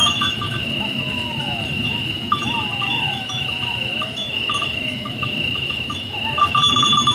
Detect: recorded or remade remade